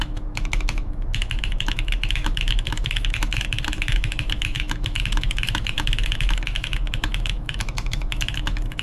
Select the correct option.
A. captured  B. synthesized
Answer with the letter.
B